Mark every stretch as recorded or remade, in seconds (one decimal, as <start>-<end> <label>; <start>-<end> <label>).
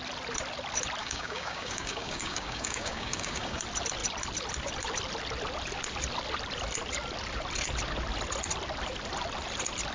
0.0-1.0 recorded; 1.0-3.6 remade; 3.6-9.9 recorded